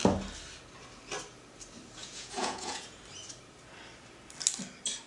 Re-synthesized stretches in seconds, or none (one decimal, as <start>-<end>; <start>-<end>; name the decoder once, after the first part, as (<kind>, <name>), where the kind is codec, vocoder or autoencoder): 2.0-3.0 (vocoder, Vocos)